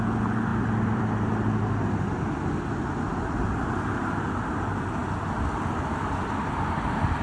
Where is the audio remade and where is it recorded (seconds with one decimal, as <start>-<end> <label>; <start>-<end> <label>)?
0.0-0.5 recorded; 0.5-1.3 remade; 1.3-5.0 recorded; 5.0-6.4 remade; 6.4-7.2 recorded